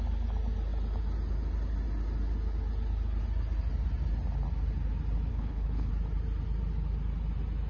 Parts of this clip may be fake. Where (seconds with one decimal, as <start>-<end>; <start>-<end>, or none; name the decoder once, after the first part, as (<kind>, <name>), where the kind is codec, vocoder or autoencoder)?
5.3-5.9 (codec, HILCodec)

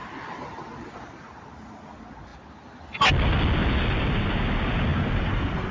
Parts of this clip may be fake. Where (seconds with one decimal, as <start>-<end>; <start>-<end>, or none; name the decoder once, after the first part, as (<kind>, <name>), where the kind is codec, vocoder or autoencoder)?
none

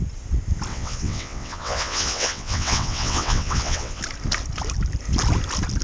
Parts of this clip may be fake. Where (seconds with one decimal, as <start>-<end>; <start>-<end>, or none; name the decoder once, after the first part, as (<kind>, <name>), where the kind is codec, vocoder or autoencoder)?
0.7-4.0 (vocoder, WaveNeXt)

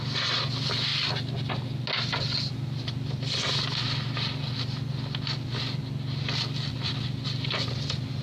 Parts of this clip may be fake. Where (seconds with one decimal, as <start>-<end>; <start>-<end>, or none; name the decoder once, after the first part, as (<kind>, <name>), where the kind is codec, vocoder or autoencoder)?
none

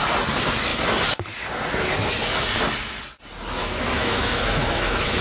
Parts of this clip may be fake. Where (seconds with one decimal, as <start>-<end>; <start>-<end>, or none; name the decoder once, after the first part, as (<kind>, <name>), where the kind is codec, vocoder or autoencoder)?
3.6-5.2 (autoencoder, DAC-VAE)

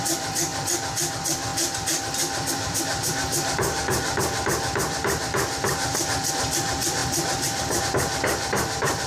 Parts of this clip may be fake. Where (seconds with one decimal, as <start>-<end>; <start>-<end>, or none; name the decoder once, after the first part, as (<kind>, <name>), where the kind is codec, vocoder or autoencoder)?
0.0-0.5 (vocoder, BigVGAN v2); 1.1-9.1